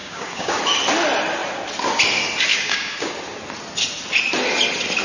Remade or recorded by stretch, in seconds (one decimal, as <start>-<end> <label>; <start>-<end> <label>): 0.0-0.6 remade; 0.6-2.5 recorded; 2.5-3.1 remade; 3.1-5.0 recorded